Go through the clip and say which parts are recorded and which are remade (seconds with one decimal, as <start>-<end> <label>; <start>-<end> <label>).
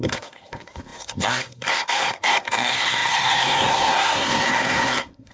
0.0-5.3 remade